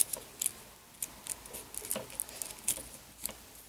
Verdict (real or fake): real